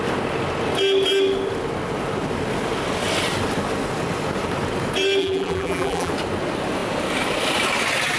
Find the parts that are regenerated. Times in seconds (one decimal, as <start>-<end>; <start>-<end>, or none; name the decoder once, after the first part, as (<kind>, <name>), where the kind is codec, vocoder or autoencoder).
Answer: 5.2-6.1 (vocoder, BigVGAN v2)